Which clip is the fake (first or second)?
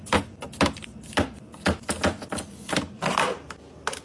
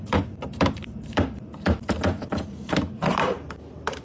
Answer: second